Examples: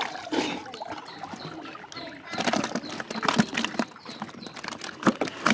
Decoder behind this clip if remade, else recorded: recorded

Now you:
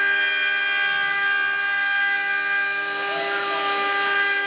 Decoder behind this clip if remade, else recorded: recorded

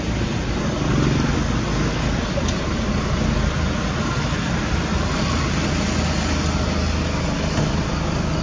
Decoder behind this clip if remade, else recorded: recorded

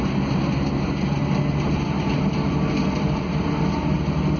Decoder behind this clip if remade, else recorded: recorded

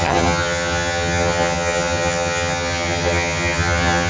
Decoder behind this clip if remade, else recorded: remade, vocoder, HiFi-GAN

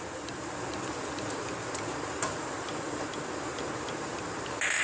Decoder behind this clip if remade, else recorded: recorded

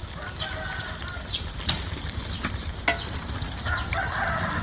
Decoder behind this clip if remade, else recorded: recorded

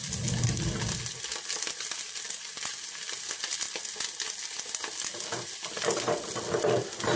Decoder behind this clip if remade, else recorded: recorded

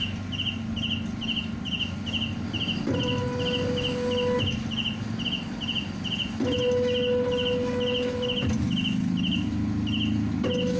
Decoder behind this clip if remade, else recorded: recorded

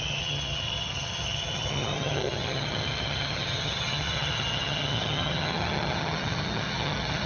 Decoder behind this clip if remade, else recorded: remade, vocoder, HiFi-GAN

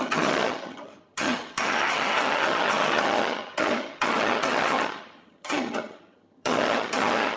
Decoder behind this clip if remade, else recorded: remade, vocoder, HiFi-GAN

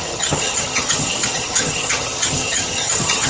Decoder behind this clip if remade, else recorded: remade, vocoder, HiFi-GAN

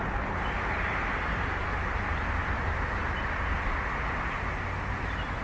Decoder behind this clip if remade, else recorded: recorded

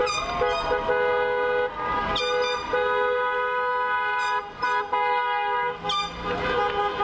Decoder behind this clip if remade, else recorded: recorded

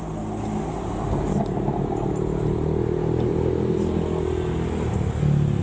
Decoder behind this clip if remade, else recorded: recorded